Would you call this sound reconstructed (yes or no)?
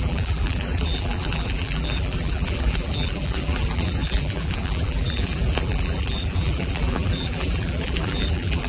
yes